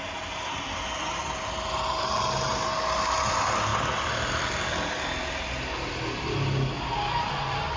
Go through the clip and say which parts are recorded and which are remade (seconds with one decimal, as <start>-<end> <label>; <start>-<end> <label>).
0.0-7.8 recorded